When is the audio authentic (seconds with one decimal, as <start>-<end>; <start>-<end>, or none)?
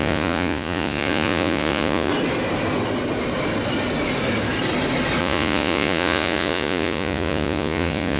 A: 2.1-5.2